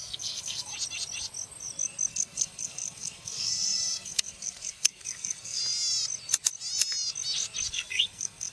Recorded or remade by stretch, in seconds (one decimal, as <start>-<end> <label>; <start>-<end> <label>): 0.0-0.7 remade; 0.7-2.1 recorded; 2.1-5.6 remade; 5.6-7.7 recorded; 7.7-8.5 remade